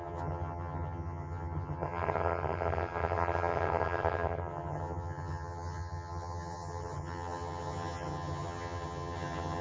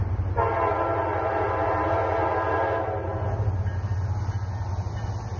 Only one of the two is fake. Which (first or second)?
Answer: first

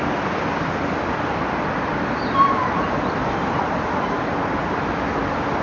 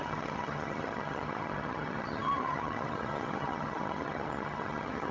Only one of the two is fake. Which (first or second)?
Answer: second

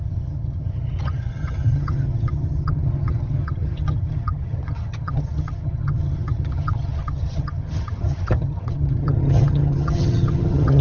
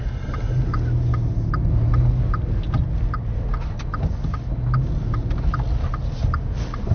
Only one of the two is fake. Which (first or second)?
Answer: first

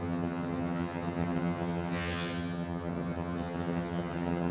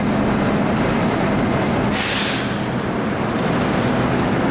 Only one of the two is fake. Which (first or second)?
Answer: first